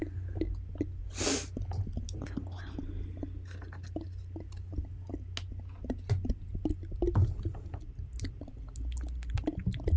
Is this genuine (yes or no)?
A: yes